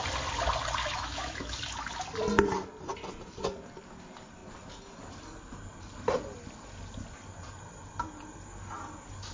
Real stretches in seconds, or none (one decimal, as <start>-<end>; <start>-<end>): 0.0-0.8; 1.6-9.3

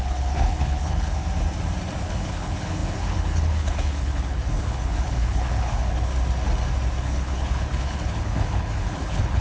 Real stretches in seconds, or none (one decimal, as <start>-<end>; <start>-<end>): 1.2-2.0; 6.1-7.0

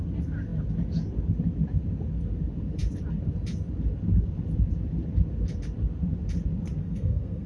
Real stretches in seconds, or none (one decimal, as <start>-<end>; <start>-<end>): 0.0-6.8